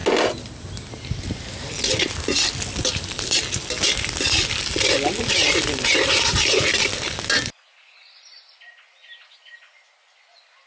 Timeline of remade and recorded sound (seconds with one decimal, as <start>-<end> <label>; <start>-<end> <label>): 0.0-10.7 recorded